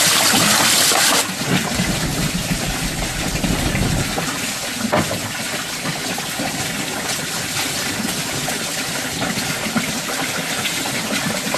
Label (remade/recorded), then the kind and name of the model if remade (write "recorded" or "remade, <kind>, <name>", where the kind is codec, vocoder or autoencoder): recorded